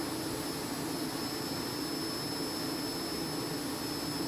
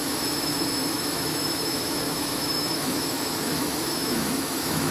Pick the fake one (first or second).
second